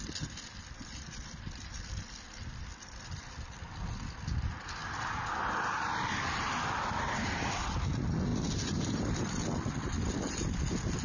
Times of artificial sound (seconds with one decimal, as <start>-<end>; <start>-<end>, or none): none